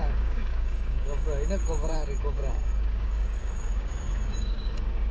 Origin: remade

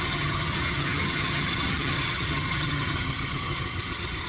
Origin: remade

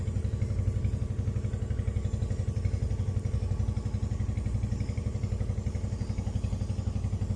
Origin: recorded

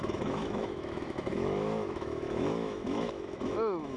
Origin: remade